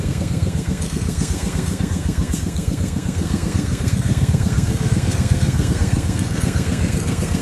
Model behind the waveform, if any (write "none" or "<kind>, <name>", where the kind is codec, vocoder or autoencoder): codec, SNAC